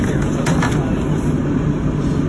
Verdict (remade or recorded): recorded